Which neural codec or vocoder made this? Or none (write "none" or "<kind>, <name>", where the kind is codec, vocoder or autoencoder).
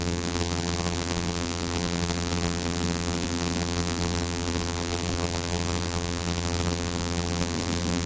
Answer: vocoder, BigVGAN v2